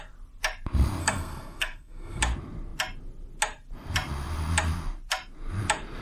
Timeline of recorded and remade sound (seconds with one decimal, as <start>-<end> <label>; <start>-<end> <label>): 0.0-1.0 recorded; 1.0-2.2 remade; 2.2-6.0 recorded